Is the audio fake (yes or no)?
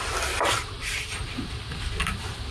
no